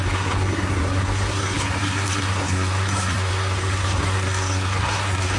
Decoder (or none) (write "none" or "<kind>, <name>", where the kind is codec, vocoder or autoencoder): codec, SNAC